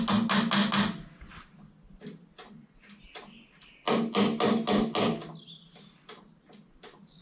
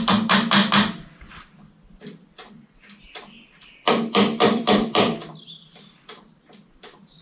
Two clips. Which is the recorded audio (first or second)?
first